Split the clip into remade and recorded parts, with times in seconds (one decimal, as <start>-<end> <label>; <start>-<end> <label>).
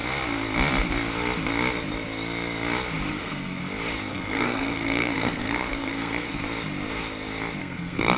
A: 0.0-3.1 recorded; 3.1-3.6 remade; 3.6-4.1 recorded; 4.1-6.4 remade; 6.4-7.6 recorded; 7.6-8.2 remade